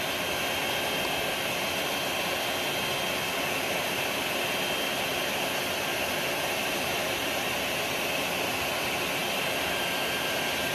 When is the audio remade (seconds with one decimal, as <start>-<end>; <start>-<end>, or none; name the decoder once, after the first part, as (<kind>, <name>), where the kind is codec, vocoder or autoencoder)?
5.9-8.7 (vocoder, BigVGAN v2)